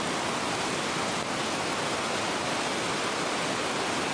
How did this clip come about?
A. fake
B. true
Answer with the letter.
B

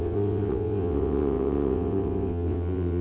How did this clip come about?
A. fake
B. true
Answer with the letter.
A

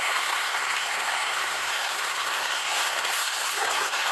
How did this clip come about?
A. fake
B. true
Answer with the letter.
A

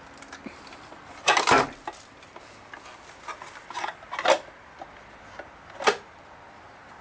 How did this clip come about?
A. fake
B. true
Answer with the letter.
B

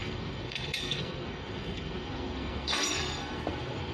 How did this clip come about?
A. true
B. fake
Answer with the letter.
B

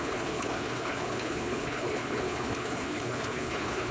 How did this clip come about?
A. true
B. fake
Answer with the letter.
B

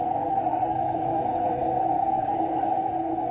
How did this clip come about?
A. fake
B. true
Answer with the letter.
A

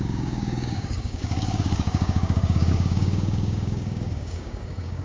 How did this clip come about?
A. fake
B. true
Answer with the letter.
A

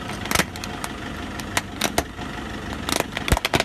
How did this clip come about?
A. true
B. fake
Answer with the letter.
A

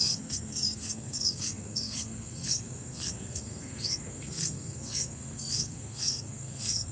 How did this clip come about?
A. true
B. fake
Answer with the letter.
B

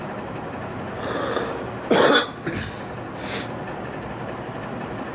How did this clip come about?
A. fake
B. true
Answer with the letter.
B